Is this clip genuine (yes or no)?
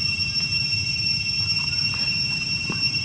no